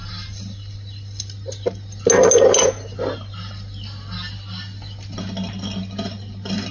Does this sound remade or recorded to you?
recorded